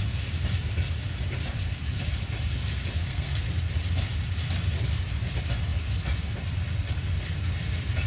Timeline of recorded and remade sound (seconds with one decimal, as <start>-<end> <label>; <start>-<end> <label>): 0.0-3.1 recorded; 3.1-3.6 remade; 3.6-8.1 recorded